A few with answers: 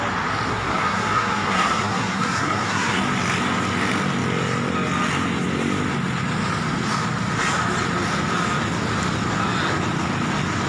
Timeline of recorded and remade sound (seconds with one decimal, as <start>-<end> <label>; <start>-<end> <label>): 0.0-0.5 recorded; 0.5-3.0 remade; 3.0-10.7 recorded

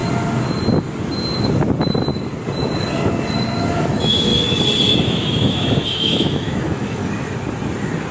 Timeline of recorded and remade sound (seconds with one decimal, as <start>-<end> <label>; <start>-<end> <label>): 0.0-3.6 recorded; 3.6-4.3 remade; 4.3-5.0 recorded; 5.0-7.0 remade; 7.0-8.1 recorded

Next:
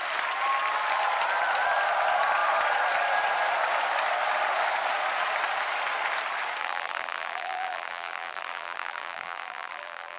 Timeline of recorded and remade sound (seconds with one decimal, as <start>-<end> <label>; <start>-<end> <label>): 0.0-6.6 recorded; 6.6-10.2 remade

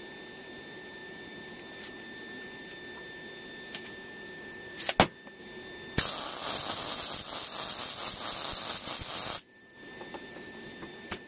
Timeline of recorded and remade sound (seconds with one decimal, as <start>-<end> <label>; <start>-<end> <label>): 0.0-11.3 recorded

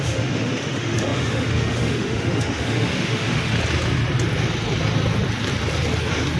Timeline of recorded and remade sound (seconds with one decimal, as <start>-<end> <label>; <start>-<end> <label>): 0.0-3.5 remade; 3.5-6.4 recorded

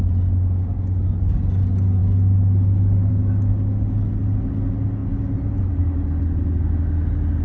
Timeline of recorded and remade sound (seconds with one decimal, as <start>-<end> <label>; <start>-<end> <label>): 0.0-7.4 recorded

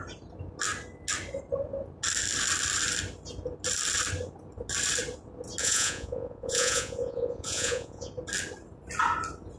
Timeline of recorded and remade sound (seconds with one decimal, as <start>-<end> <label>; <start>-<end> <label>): 0.0-5.6 recorded; 5.6-8.1 remade; 8.1-9.6 recorded